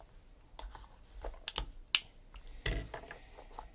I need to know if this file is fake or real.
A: real